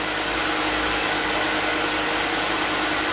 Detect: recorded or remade recorded